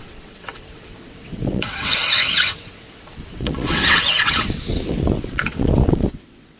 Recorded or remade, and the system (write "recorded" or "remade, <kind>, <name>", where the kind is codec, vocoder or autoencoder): remade, vocoder, WaveNeXt